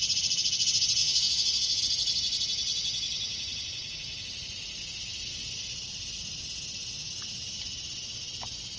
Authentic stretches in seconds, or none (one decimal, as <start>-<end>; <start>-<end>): 0.0-1.0; 1.8-8.8